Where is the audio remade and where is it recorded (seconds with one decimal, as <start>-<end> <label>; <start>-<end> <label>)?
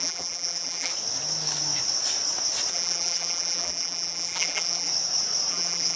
0.0-0.9 remade; 0.9-2.7 recorded; 2.7-4.9 remade; 4.9-5.5 recorded; 5.5-6.0 remade